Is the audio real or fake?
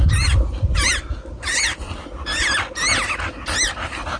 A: real